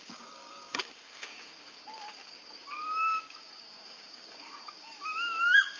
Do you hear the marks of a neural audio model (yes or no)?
yes